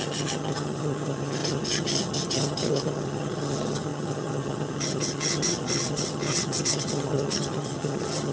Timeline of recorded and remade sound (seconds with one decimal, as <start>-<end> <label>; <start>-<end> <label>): 0.0-8.3 remade